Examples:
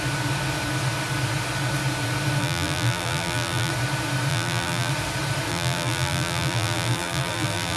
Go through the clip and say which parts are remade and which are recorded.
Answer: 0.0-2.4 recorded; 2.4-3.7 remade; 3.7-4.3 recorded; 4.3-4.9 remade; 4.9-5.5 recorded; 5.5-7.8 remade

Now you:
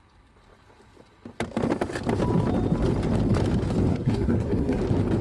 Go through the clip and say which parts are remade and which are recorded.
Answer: 0.0-3.9 recorded; 3.9-4.8 remade; 4.8-5.2 recorded

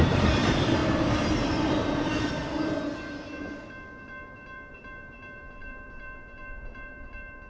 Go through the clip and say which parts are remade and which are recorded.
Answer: 0.0-0.8 remade; 0.8-1.6 recorded; 1.6-2.4 remade; 2.4-3.4 recorded; 3.4-7.5 remade

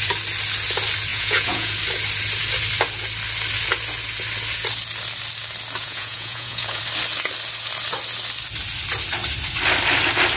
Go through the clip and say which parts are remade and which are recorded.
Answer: 0.0-1.1 recorded; 1.1-1.7 remade; 1.7-5.8 recorded; 5.8-6.8 remade; 6.8-10.4 recorded

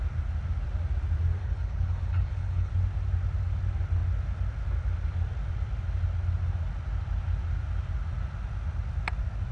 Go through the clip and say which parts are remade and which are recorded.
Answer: 0.0-1.4 recorded; 1.4-2.7 remade; 2.7-9.5 recorded

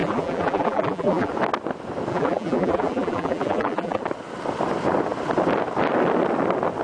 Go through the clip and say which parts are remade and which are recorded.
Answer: 0.0-1.3 remade; 1.3-2.1 recorded; 2.1-4.0 remade; 4.0-6.8 recorded